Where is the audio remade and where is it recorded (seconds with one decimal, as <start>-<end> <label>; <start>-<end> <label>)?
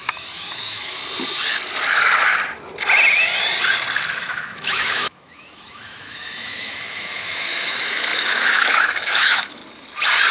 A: 0.0-1.0 remade; 1.0-4.2 recorded; 4.2-9.6 remade; 9.6-10.3 recorded